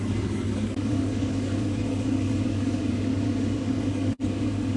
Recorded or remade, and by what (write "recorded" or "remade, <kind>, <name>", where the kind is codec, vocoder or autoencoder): remade, codec, DAC